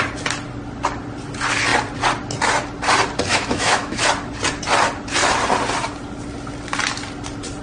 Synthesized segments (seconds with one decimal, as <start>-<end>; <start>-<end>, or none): 3.3-4.0